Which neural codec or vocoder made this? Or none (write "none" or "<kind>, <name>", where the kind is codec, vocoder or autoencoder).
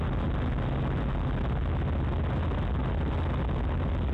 none